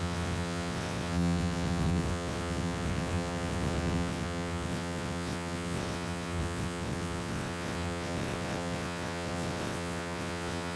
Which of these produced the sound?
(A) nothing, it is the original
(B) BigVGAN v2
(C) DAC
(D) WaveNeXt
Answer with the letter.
D